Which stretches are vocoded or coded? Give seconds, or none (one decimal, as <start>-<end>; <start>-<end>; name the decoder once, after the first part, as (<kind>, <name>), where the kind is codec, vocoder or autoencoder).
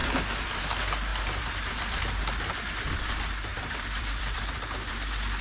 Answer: 0.0-0.6 (vocoder, BigVGAN v2); 1.1-2.0; 3.5-4.9